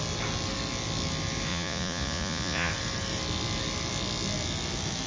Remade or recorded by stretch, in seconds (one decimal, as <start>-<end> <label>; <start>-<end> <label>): 0.0-1.5 recorded; 1.5-2.7 remade; 2.7-5.1 recorded